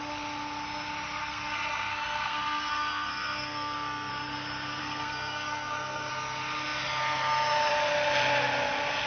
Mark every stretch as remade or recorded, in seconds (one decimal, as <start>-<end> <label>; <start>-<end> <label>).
0.0-1.2 recorded; 1.2-4.1 remade; 4.1-4.8 recorded; 4.8-6.1 remade; 6.1-9.1 recorded